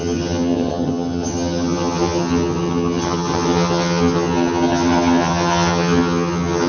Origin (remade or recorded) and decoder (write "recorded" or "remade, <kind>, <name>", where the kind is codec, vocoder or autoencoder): remade, vocoder, HiFi-GAN